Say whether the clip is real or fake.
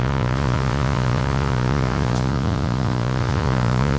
fake